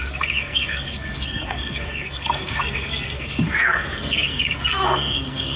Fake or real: fake